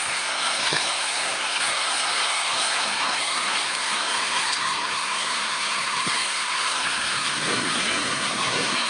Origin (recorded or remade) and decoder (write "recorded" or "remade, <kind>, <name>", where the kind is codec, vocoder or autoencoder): remade, codec, SNAC